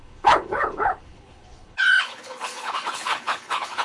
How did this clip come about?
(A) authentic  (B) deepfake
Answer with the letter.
B